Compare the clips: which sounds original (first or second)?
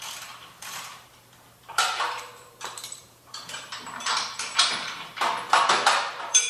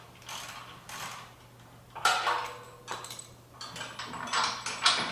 second